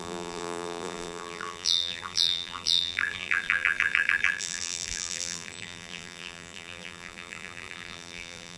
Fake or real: fake